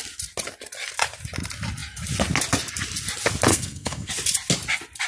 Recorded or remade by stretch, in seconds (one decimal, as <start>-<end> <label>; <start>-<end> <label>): 0.0-3.5 recorded; 3.5-4.1 remade; 4.1-5.1 recorded